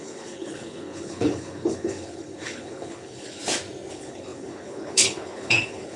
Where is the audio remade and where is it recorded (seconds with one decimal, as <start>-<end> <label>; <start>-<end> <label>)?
0.0-3.4 remade; 3.4-3.9 recorded; 3.9-6.0 remade